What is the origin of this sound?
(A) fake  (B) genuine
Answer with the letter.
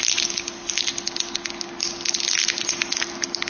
B